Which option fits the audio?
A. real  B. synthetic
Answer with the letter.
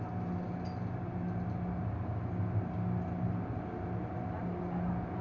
A